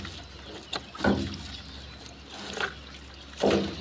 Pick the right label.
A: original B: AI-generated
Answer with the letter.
A